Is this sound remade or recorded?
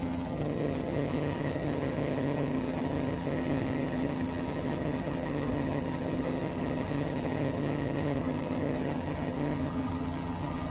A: remade